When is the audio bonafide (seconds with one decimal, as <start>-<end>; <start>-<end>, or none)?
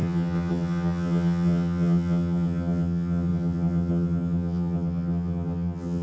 none